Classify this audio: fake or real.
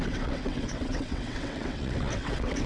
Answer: fake